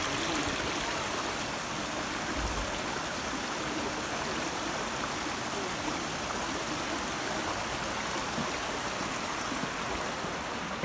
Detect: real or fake real